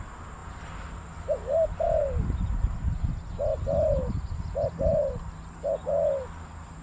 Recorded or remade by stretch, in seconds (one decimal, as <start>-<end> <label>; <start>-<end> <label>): 0.0-2.0 recorded; 2.0-2.9 remade; 2.9-6.8 recorded